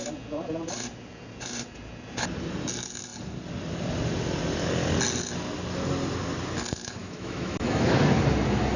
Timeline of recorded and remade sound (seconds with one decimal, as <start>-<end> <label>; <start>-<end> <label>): 0.0-7.0 recorded; 7.0-7.9 remade; 7.9-8.8 recorded